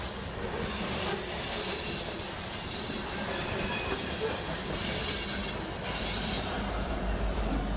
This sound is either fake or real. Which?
fake